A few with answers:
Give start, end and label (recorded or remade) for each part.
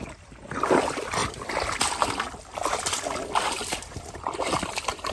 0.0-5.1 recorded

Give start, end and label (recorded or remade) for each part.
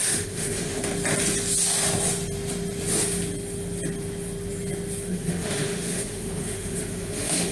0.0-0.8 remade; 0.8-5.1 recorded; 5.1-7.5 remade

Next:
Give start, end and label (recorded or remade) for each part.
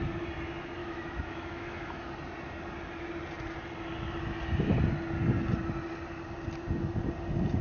0.0-0.8 recorded; 0.8-2.1 remade; 2.1-7.6 recorded